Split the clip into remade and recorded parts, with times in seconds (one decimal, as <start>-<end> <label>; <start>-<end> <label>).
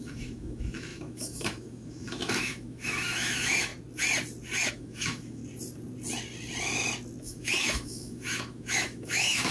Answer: 0.0-3.7 remade; 3.7-4.7 recorded; 4.7-5.4 remade; 5.4-7.2 recorded; 7.2-9.5 remade